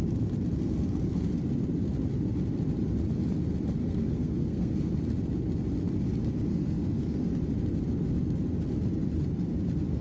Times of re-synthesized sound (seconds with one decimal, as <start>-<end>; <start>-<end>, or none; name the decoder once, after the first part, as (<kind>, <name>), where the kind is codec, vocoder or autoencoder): 3.8-4.9 (codec, SNAC); 6.5-7.3